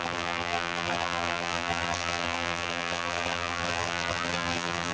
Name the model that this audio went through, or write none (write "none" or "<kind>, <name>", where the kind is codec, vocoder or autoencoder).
vocoder, BigVGAN v2